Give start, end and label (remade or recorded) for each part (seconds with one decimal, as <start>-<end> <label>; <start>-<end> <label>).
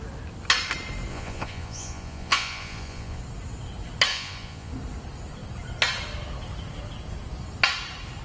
0.0-1.1 recorded; 1.1-3.2 remade; 3.2-4.1 recorded; 4.1-4.7 remade; 4.7-8.2 recorded